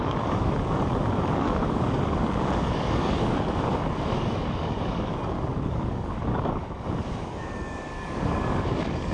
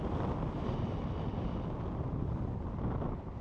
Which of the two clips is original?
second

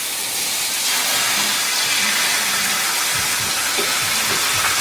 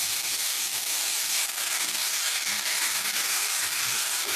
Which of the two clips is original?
first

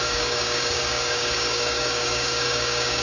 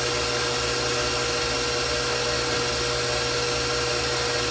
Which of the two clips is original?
second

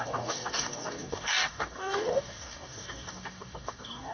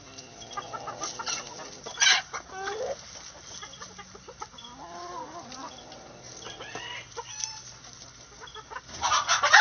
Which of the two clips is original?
second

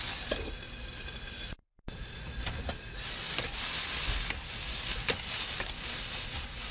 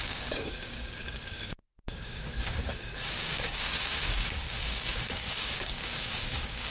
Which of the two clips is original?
first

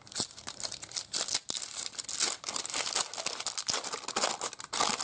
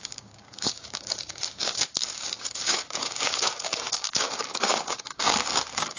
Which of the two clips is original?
first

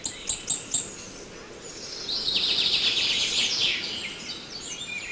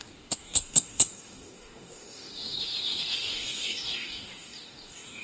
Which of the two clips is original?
first